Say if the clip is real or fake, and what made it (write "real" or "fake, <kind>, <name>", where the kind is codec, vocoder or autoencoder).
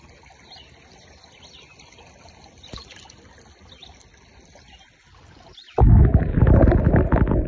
real